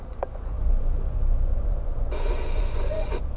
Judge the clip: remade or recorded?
remade